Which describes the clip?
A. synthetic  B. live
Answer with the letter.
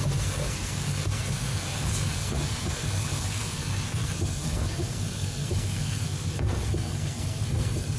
A